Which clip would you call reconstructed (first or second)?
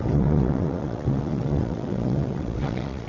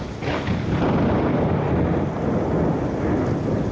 first